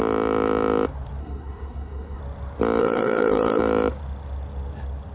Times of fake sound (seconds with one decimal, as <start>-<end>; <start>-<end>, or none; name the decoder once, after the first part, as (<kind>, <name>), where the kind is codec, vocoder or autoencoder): 1.2-2.2 (codec, SNAC); 2.8-3.6

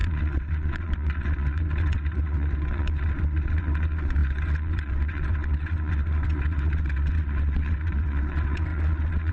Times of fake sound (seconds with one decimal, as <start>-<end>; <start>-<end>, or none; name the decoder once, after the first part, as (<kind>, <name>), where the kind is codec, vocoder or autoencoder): 0.0-9.3 (vocoder, WaveNeXt)

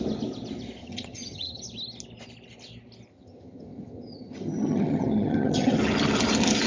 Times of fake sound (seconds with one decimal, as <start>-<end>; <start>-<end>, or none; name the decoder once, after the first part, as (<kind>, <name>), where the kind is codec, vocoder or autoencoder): 0.8-1.6 (vocoder, HiFi-GAN); 3.1-5.8

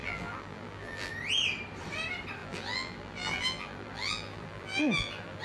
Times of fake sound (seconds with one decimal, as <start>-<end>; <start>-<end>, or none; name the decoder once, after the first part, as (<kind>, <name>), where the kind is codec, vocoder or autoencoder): 0.0-1.1 (vocoder, BigVGAN v2); 2.4-5.4

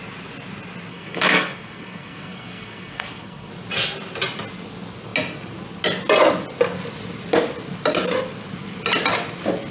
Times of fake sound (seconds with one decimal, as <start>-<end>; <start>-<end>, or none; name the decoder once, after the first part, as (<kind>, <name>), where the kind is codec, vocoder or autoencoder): 0.9-3.5 (codec, SNAC)

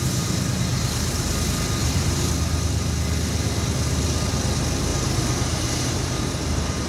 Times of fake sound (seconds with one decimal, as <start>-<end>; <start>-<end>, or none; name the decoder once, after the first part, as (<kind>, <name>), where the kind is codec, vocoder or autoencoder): 0.7-1.3 (vocoder, BigVGAN v2); 1.8-2.3; 4.9-6.9

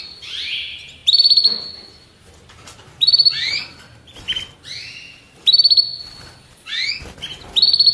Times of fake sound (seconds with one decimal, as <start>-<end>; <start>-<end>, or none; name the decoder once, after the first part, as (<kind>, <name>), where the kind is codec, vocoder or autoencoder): none